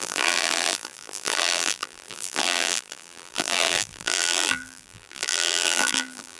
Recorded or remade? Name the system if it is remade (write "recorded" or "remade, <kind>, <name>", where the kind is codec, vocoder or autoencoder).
remade, vocoder, BigVGAN v2